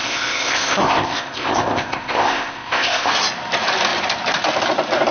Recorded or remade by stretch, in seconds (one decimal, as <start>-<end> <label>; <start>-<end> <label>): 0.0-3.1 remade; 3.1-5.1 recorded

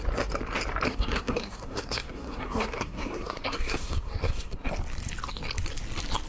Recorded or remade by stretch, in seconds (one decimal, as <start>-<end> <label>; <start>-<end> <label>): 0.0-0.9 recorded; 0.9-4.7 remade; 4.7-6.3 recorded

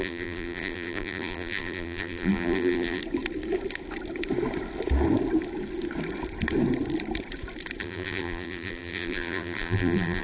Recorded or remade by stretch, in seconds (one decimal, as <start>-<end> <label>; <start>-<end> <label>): 0.0-3.0 remade; 3.0-7.8 recorded; 7.8-10.2 remade

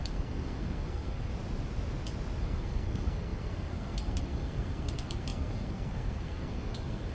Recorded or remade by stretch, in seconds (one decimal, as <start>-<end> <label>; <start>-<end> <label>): 0.0-1.3 remade; 1.3-2.4 recorded; 2.4-7.1 remade